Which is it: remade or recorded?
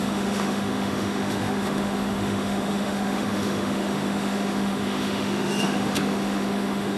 remade